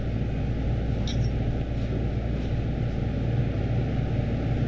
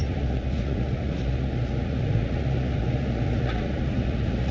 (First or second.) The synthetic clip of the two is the second